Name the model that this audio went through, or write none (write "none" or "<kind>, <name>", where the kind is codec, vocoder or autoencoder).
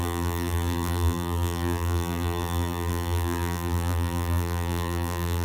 vocoder, BigVGAN v2